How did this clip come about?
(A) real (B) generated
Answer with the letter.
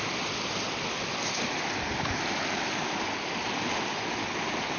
A